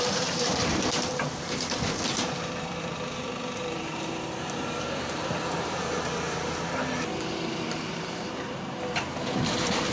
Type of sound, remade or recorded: remade